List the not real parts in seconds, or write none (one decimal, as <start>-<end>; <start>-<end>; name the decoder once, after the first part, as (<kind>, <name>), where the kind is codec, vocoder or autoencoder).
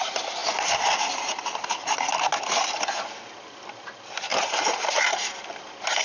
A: none